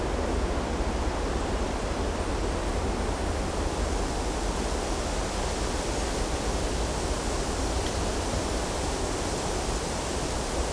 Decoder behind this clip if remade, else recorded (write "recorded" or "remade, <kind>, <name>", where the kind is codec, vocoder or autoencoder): recorded